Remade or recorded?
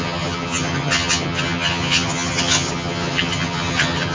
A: remade